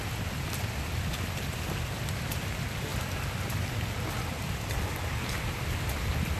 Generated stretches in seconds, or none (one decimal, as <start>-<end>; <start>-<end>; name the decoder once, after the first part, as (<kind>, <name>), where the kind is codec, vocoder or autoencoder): none